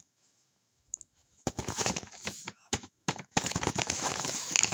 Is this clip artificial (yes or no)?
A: yes